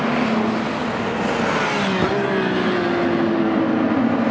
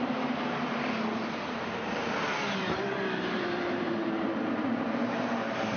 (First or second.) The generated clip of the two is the second